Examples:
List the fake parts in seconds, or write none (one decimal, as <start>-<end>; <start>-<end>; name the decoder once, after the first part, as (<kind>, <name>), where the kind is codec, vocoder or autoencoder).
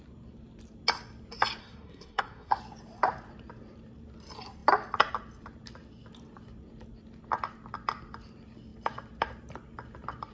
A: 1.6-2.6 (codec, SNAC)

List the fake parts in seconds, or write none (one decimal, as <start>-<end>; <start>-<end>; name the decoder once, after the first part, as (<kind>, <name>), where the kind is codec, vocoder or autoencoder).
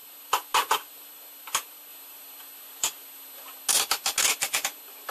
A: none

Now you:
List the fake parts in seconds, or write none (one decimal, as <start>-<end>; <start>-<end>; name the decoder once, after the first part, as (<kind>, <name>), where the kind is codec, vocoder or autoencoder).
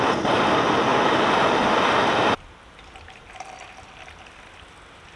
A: none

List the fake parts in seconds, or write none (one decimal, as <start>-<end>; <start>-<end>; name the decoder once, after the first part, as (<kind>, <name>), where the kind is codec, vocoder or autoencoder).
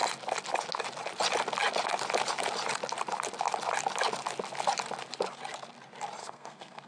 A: 6.2-6.9 (codec, SNAC)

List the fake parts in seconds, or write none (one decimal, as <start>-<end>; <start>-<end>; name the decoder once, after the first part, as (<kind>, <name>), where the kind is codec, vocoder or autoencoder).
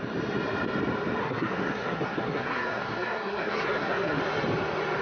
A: 1.2-4.2 (codec, SNAC)